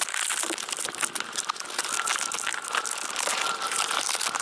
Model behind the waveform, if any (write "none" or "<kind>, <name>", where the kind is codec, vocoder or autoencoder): none